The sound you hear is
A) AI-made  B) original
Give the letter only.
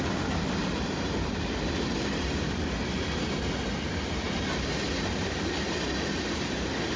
B